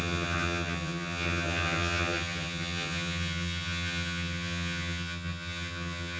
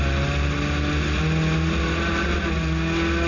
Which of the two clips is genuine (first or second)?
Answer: second